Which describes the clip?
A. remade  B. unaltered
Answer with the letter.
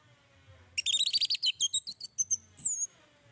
B